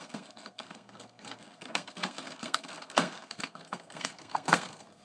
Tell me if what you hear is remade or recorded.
remade